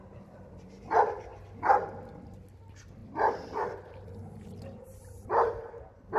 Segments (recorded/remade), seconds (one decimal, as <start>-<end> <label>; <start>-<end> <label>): 0.0-3.0 recorded; 3.0-4.4 remade; 4.4-6.2 recorded